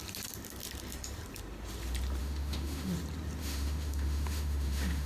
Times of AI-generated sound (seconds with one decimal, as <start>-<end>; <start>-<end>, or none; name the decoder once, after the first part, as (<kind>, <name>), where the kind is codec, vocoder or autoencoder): 2.2-2.9 (autoencoder, DAC-VAE); 3.4-5.1

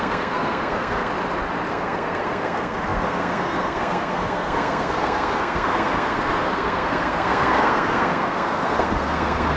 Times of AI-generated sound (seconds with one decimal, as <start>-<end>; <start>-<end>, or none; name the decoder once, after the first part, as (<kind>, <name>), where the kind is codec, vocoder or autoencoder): 0.0-1.1 (codec, SNAC); 1.7-9.6

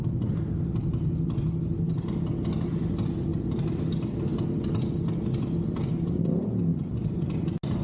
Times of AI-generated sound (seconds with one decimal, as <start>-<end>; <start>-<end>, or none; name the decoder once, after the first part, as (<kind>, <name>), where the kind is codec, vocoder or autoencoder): 3.3-3.8 (vocoder, BigVGAN v2); 6.7-7.3

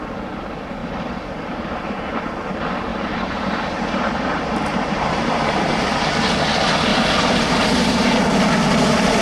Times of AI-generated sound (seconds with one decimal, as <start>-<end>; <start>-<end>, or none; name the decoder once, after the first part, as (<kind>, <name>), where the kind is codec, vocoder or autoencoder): 0.8-2.2 (vocoder, BigVGAN v2); 2.9-5.9; 6.9-8.2

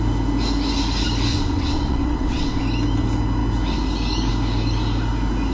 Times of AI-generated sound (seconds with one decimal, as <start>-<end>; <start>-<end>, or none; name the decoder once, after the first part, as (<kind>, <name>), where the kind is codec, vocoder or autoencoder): 1.3-2.6 (vocoder, WaveNeXt)

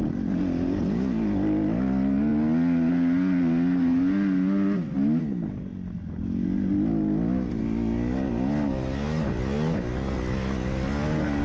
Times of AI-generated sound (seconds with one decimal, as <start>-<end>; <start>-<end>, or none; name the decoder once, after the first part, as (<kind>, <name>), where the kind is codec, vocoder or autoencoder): none

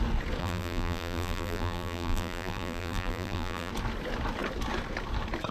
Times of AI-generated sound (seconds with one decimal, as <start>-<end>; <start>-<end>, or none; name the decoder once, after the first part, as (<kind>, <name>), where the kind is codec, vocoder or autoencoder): 0.4-3.7 (vocoder, BigVGAN v2)